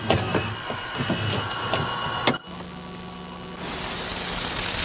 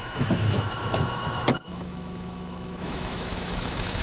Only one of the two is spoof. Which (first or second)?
second